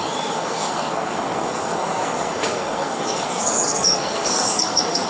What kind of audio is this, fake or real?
fake